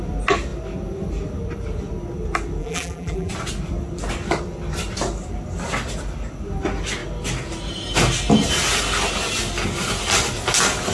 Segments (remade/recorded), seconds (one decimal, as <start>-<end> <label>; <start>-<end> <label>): 0.0-2.6 recorded; 2.6-3.3 remade; 3.3-10.9 recorded